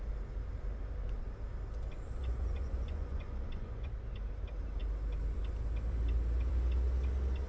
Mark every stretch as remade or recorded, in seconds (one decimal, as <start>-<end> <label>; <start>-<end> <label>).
0.0-2.2 recorded; 2.2-3.9 remade; 3.9-7.5 recorded